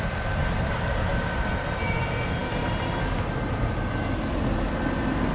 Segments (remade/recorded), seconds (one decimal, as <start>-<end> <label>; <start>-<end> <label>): 0.0-5.3 recorded